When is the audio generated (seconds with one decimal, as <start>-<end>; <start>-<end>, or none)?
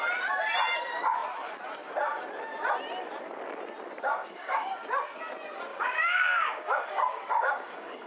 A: 4.2-4.7; 5.7-8.1